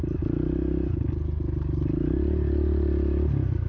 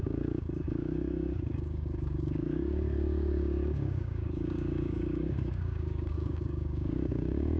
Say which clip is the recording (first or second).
first